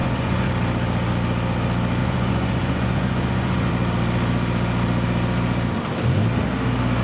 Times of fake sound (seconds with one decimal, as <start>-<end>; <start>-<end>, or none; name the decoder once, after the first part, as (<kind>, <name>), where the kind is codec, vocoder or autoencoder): 0.0-0.5 (vocoder, Vocos); 2.0-3.7